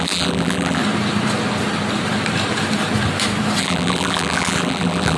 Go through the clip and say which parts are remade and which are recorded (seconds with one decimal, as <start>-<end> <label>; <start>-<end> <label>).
0.0-0.8 remade; 0.8-3.6 recorded; 3.6-5.2 remade